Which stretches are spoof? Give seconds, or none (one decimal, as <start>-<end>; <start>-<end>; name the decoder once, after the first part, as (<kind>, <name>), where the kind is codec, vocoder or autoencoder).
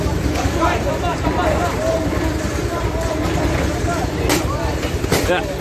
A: 1.1-2.2 (vocoder, BigVGAN v2)